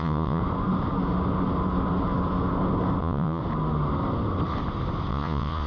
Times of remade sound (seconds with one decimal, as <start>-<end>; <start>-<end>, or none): 0.0-0.4; 3.0-3.4; 5.1-5.7